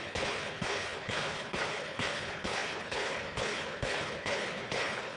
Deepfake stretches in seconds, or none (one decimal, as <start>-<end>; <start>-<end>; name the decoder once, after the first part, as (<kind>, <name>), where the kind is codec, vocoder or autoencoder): 0.0-5.2 (codec, HILCodec)